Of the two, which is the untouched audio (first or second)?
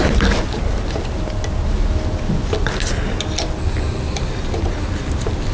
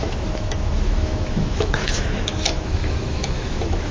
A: first